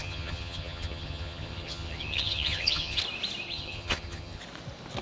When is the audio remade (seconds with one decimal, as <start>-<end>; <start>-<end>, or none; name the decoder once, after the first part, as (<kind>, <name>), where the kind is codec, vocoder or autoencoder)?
0.0-3.0 (vocoder, HiFi-GAN); 3.5-4.4